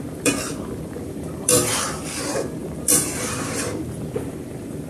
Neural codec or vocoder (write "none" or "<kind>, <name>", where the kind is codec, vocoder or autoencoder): vocoder, BigVGAN v2